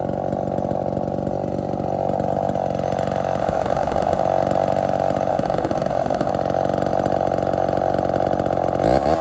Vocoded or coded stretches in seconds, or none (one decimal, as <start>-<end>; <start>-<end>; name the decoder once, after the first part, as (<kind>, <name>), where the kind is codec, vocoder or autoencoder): 3.4-4.2 (autoencoder, DAC-VAE); 5.3-6.3